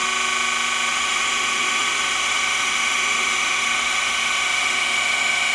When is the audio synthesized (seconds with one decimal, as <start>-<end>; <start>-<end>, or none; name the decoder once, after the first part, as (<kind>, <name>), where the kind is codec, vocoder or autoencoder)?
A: 0.9-5.5 (autoencoder, DAC-VAE)